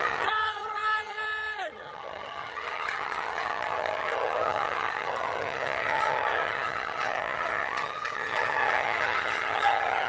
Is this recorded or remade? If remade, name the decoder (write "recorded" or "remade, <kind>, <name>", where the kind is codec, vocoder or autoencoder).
remade, vocoder, HiFi-GAN